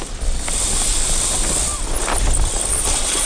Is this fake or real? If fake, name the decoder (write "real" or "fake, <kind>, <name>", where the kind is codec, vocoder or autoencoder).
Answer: real